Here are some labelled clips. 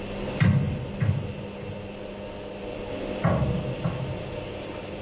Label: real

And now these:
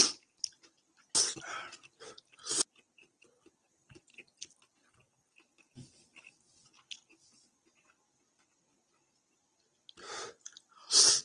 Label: real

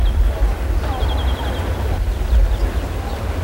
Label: real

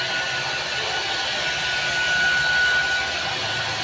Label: real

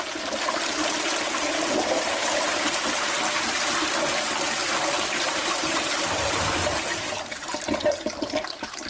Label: fake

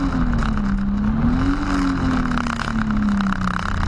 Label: real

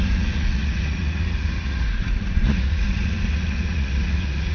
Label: fake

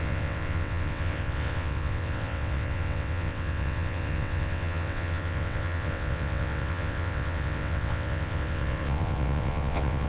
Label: fake